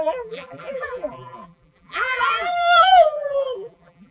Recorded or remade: remade